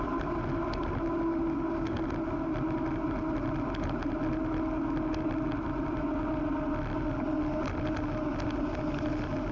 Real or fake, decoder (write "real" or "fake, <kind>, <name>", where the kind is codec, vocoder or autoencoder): real